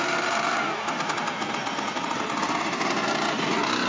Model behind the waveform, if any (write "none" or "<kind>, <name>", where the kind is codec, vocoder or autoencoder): none